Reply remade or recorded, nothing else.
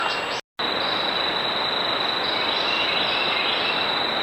recorded